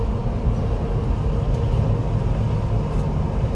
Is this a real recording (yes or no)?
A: yes